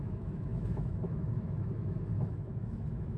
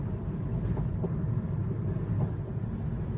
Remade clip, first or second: first